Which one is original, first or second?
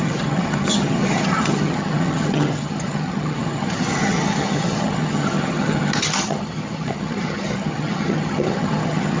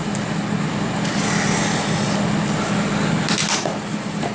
second